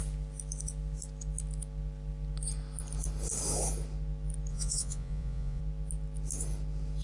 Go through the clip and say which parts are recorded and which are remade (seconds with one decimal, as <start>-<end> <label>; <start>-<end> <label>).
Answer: 0.0-4.5 recorded; 4.5-5.6 remade; 5.6-7.0 recorded